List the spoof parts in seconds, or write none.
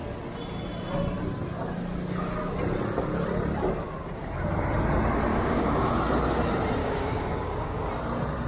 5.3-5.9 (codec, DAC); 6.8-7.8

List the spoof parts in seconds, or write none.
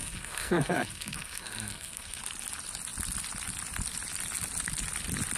0.0-2.2 (codec, SNAC)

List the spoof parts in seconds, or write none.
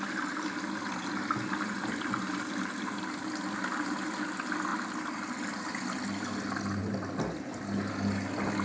none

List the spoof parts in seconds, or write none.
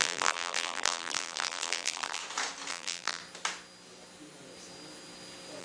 0.0-2.2 (vocoder, BigVGAN v2); 2.7-3.2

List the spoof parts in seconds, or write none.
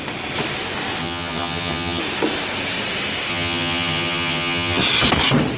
1.0-2.0 (vocoder, HiFi-GAN); 3.3-4.8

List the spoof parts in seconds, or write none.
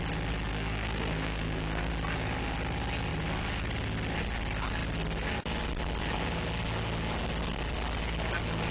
0.5-1.9 (codec, SNAC)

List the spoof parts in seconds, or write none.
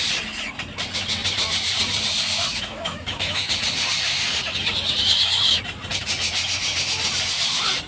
2.5-3.5 (autoencoder, DAC-VAE)